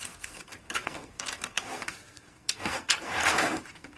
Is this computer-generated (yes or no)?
yes